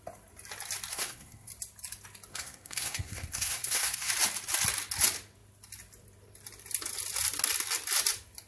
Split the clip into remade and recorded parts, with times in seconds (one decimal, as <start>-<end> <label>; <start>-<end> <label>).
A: 0.0-0.9 recorded; 0.9-1.5 remade; 1.5-2.3 recorded; 2.3-4.1 remade; 4.1-8.5 recorded